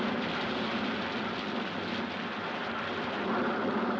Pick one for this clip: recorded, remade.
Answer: recorded